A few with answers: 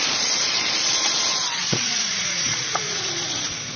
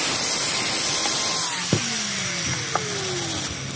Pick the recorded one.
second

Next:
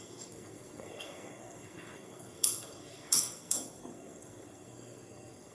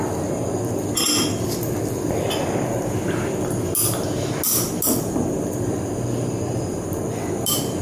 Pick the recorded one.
second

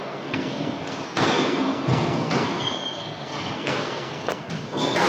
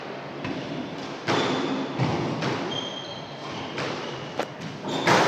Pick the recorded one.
second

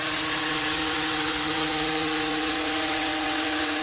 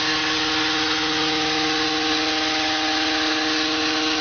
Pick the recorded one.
second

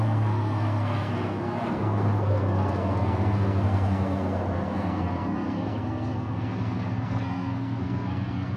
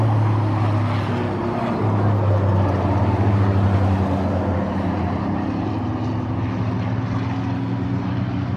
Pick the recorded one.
second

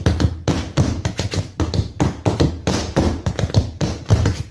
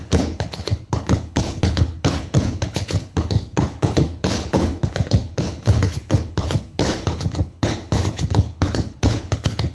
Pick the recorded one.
first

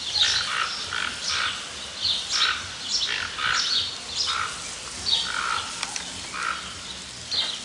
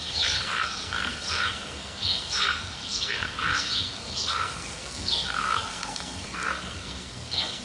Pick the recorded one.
first